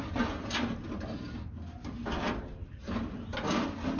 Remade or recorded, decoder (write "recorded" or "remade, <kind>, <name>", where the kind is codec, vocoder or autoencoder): recorded